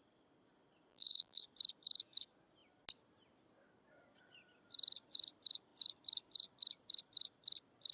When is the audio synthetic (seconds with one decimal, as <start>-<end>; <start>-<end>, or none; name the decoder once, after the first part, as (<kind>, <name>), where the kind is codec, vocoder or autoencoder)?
0.9-1.4 (vocoder, BigVGAN v2)